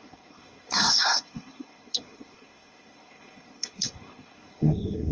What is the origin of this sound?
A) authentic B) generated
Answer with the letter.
B